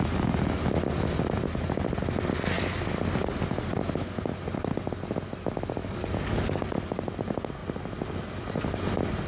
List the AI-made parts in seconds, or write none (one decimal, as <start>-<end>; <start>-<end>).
5.8-6.8